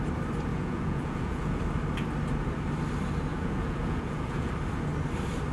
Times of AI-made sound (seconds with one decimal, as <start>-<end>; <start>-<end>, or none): 0.5-1.6; 3.3-4.5